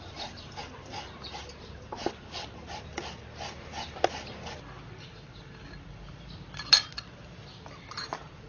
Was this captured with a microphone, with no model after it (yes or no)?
yes